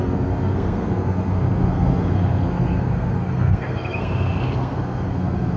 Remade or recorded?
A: remade